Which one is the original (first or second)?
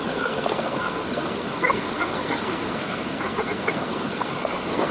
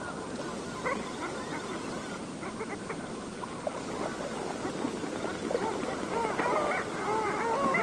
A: second